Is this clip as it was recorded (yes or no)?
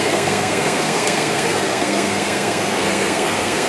no